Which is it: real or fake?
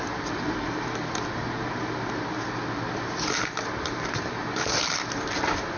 real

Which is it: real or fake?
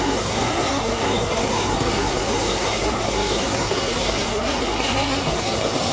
fake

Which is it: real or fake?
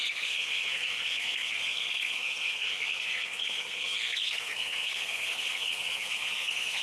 fake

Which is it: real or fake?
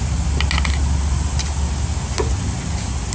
real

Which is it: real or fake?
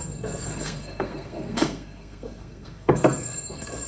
fake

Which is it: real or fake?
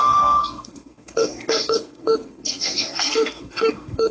fake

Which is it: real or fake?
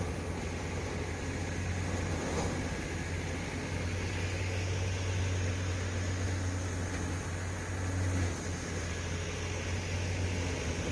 real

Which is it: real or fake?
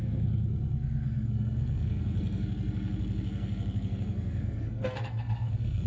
fake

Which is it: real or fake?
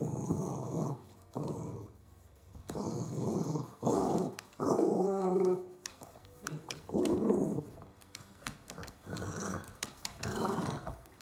fake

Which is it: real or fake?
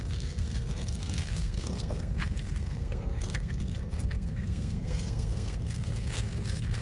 fake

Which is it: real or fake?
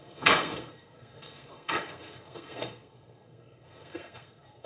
fake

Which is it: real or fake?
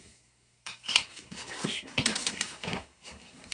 fake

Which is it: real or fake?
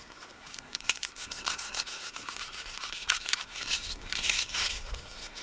fake